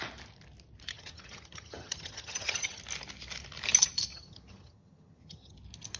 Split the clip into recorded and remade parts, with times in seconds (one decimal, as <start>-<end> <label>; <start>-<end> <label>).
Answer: 0.0-0.9 recorded; 0.9-2.8 remade; 2.8-4.1 recorded; 4.1-5.5 remade; 5.5-6.0 recorded